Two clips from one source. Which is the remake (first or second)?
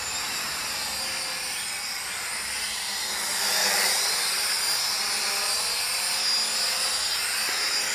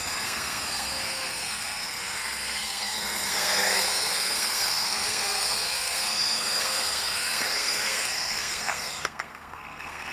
second